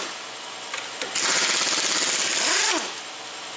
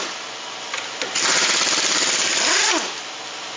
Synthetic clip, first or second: second